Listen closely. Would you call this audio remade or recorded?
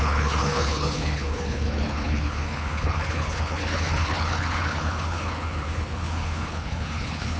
remade